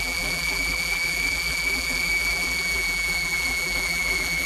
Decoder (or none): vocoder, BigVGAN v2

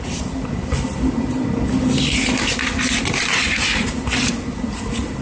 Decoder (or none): none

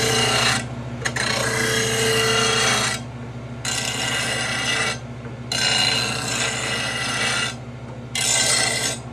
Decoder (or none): none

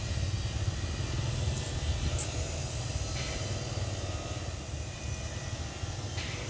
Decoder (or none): none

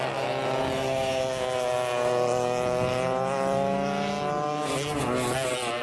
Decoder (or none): none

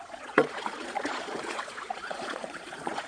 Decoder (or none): vocoder, Vocos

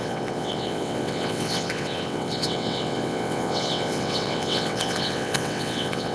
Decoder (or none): vocoder, WaveNeXt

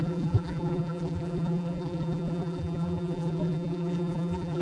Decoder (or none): vocoder, BigVGAN v2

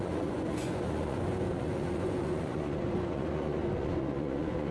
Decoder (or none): vocoder, Vocos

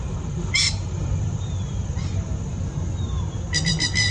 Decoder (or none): vocoder, BigVGAN v2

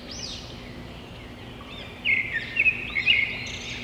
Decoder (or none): vocoder, BigVGAN v2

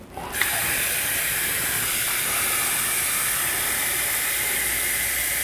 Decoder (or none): none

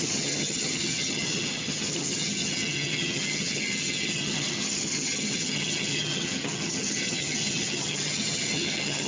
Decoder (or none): vocoder, HiFi-GAN